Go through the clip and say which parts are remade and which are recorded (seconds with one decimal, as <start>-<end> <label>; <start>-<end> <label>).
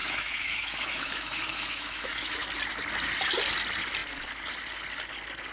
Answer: 0.0-2.4 remade; 2.4-5.5 recorded